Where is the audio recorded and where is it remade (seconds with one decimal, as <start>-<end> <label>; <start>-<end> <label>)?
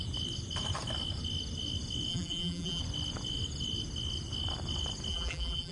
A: 0.0-2.1 recorded; 2.1-2.8 remade; 2.8-5.1 recorded; 5.1-5.7 remade